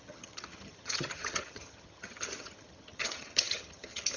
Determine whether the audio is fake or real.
fake